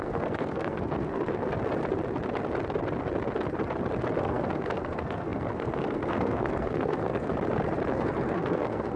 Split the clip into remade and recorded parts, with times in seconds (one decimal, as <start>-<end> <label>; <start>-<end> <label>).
0.0-1.5 remade; 1.5-4.2 recorded; 4.2-7.3 remade; 7.3-7.9 recorded; 7.9-9.0 remade